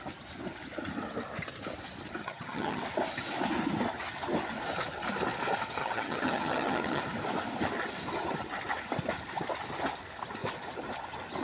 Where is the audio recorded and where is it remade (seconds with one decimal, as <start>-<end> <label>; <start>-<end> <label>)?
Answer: 0.0-2.2 recorded; 2.2-2.8 remade; 2.8-5.8 recorded; 5.8-7.0 remade; 7.0-11.4 recorded